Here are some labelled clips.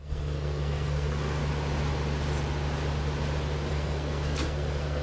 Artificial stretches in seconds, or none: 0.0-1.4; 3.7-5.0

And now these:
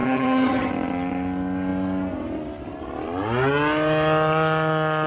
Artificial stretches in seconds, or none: 0.0-0.7

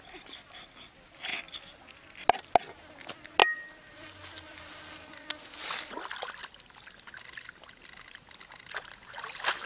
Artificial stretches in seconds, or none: none

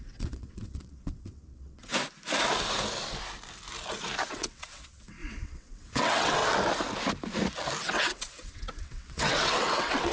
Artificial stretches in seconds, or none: 0.0-1.9; 4.3-6.4; 7.8-10.1